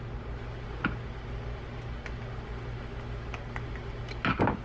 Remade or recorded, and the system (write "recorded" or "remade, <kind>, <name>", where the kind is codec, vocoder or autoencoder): recorded